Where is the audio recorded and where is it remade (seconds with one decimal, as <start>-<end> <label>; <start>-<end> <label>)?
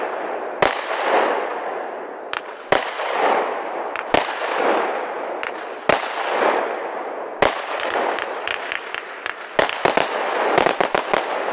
0.0-11.5 recorded